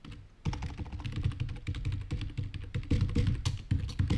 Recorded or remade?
recorded